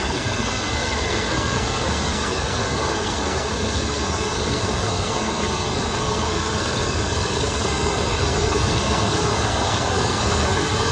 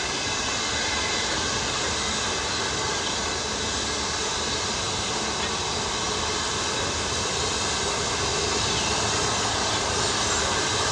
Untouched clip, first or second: second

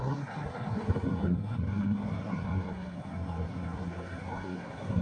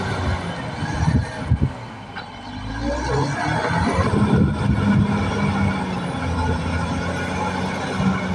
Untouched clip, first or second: second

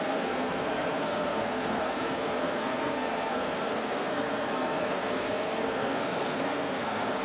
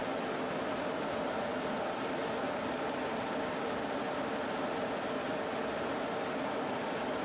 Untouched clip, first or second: second